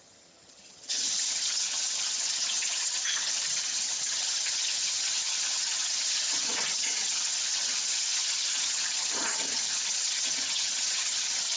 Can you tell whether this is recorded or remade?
remade